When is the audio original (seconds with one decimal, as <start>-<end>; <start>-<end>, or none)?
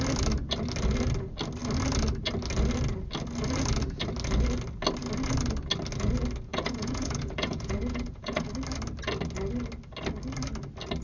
0.0-6.5; 8.5-11.0